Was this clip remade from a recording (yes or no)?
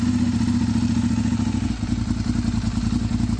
no